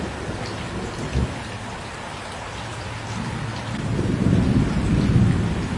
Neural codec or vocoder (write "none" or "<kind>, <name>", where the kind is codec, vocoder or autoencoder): none